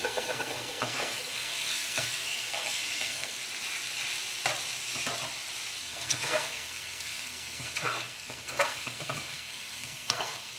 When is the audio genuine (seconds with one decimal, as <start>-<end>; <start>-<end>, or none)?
3.4-5.8